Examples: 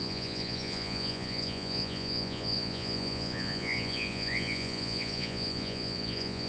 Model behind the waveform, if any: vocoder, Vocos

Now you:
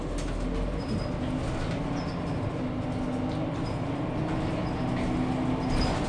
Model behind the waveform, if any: none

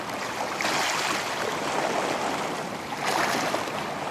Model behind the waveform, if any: none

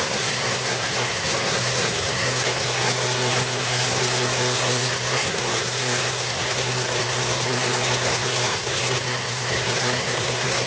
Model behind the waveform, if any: codec, SNAC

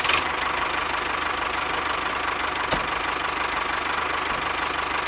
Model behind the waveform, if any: none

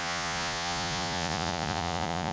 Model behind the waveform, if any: vocoder, Vocos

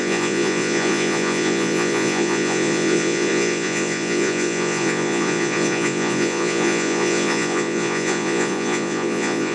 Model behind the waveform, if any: vocoder, Vocos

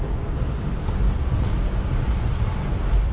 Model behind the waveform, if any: none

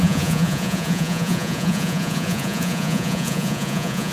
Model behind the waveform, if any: vocoder, Vocos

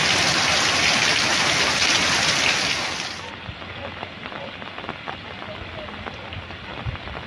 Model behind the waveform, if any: none